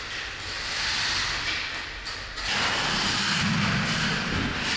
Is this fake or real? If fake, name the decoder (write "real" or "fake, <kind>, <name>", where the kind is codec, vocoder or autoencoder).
real